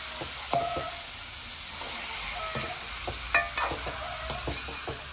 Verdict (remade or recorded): recorded